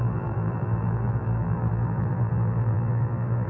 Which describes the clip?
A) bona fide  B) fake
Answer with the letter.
B